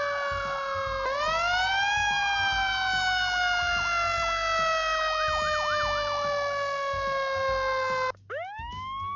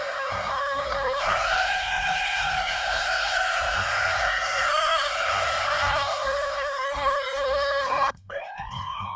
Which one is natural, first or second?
first